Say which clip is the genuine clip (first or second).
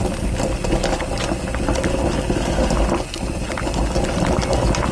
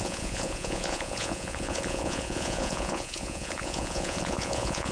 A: first